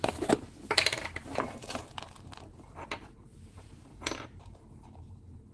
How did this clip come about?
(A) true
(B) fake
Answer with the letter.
B